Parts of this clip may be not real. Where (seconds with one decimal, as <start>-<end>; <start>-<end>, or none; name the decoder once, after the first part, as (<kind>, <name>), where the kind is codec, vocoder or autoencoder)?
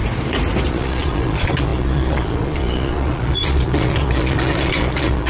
0.7-5.3 (vocoder, Vocos)